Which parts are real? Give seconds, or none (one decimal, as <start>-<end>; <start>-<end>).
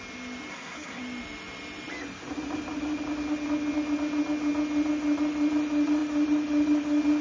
0.0-0.5; 1.0-7.2